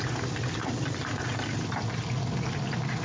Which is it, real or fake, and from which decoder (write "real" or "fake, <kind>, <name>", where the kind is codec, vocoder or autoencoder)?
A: fake, vocoder, BigVGAN v2